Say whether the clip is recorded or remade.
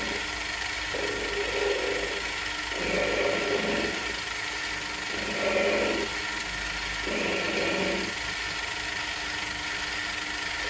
recorded